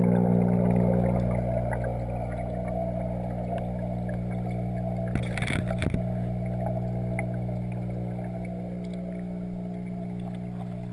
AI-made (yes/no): no